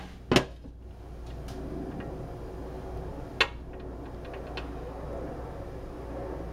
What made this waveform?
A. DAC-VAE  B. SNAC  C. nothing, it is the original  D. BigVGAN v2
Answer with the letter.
C